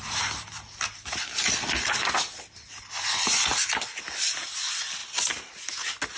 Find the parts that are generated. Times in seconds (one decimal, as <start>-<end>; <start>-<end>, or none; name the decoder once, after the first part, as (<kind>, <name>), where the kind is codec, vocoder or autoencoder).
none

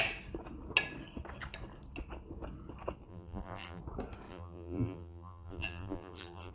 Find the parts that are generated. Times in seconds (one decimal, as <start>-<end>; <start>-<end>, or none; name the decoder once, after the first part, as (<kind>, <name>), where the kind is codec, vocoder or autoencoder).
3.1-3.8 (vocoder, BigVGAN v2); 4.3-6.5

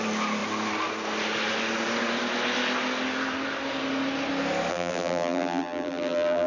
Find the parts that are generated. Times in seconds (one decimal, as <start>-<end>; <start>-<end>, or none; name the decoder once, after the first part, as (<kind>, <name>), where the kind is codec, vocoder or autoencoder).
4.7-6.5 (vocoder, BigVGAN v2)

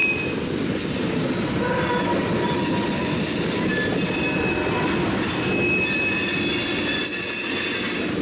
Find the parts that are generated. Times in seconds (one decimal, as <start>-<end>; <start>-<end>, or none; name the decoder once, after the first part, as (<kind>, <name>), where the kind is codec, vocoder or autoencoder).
0.0-0.7 (vocoder, BigVGAN v2)

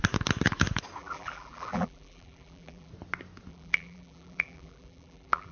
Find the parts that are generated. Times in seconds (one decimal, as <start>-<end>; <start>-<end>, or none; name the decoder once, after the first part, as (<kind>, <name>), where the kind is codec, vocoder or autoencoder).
1.0-2.9 (vocoder, BigVGAN v2); 3.5-5.5

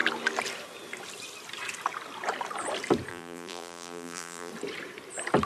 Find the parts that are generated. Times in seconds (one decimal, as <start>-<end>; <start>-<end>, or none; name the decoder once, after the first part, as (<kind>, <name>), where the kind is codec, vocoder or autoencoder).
3.1-4.5 (vocoder, BigVGAN v2)

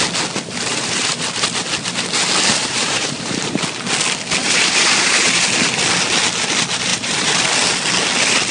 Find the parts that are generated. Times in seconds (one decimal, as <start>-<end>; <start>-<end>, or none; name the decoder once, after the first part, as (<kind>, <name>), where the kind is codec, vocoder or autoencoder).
0.7-1.2 (vocoder, BigVGAN v2); 2.6-3.6; 4.4-5.4; 6.9-7.4

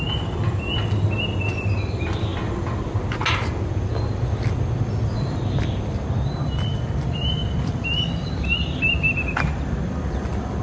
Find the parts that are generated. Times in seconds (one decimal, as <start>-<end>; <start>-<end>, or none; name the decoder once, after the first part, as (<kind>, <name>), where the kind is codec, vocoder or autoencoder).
none